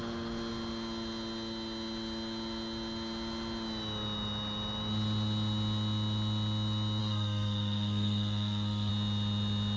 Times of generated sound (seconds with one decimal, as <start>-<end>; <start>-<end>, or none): 7.0-8.9